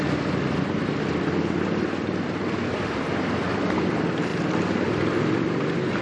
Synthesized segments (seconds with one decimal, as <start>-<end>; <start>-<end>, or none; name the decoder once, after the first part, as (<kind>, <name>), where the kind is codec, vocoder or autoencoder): 0.0-6.0 (vocoder, BigVGAN v2)